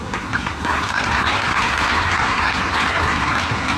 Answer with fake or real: fake